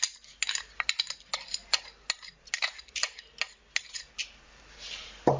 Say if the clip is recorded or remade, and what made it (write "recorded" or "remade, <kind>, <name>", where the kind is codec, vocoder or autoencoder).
recorded